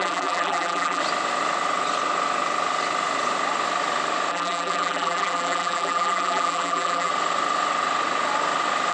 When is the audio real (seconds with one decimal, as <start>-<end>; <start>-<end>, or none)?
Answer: 1.0-4.3; 7.1-8.9